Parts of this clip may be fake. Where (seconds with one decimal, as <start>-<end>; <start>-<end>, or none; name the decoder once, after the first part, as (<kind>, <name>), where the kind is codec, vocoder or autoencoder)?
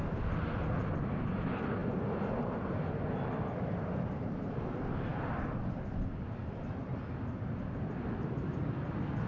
none